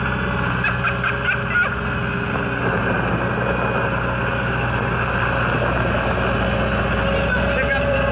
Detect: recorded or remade recorded